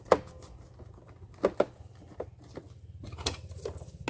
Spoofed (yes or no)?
no